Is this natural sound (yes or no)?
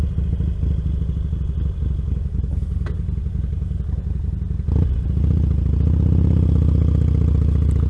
yes